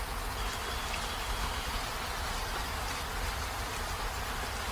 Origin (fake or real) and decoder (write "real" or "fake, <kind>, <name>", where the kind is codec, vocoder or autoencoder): fake, vocoder, BigVGAN v2